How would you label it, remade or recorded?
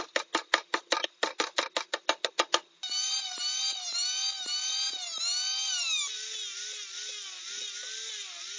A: recorded